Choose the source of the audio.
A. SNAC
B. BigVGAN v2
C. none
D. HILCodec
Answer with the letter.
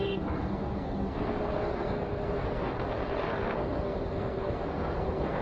A